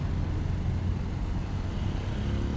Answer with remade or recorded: recorded